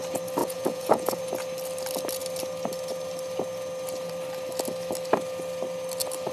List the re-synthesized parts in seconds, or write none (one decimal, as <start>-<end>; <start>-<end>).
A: 0.4-1.2